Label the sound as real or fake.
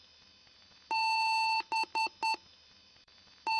real